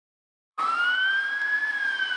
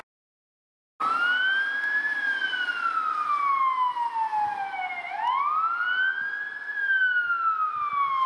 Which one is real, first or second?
second